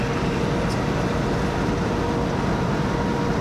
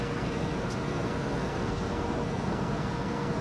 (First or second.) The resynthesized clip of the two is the second